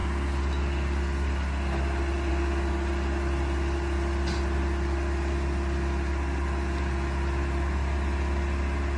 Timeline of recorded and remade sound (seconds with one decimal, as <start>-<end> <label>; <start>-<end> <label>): 0.0-9.0 recorded